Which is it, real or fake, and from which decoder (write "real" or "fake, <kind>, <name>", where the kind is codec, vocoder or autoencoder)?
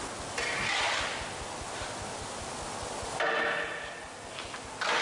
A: real